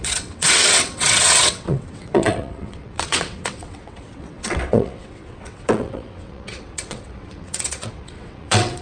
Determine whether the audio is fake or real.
fake